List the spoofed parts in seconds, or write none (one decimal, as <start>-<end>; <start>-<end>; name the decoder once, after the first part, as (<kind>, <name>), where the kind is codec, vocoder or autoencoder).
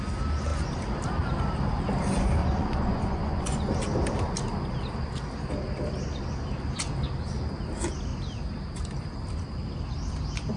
2.4-3.7 (vocoder, Vocos)